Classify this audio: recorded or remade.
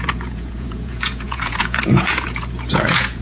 remade